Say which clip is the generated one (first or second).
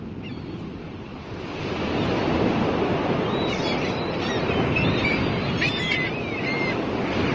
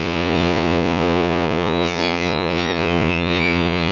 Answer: second